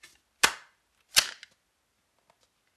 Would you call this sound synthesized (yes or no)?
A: no